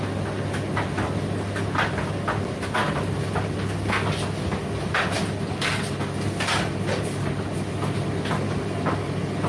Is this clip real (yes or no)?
yes